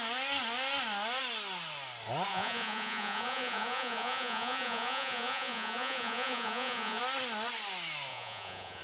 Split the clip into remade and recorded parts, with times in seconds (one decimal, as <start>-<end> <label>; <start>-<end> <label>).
0.0-2.3 recorded; 2.3-7.0 remade; 7.0-8.1 recorded; 8.1-8.8 remade